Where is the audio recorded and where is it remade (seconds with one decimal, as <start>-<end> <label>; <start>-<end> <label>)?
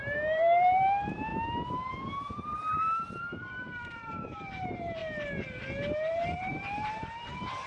0.0-1.3 remade; 1.3-2.1 recorded; 2.1-5.0 remade; 5.0-6.1 recorded; 6.1-7.7 remade